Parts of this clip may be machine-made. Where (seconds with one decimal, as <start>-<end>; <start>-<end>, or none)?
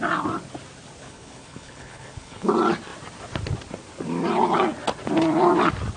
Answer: 1.0-2.5